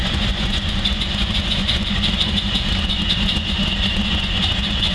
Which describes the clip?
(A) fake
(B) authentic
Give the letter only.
A